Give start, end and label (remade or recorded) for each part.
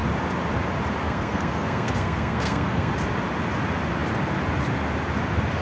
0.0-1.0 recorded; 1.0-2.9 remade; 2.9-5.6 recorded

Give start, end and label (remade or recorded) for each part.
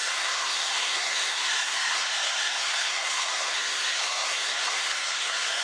0.0-5.6 remade